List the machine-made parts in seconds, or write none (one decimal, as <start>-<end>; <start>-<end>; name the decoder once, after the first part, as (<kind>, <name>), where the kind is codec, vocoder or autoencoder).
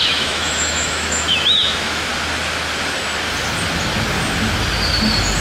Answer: 0.0-2.1 (autoencoder, DAC-VAE)